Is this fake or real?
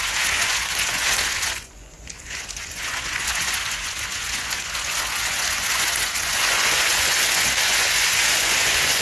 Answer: fake